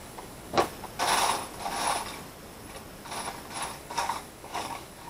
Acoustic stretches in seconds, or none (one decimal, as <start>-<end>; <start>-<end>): 0.7-3.8